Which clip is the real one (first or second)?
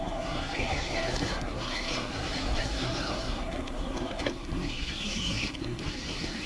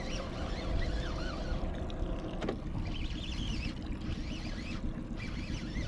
second